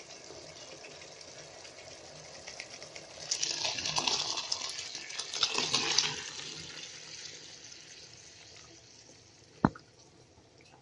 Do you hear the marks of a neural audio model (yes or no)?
no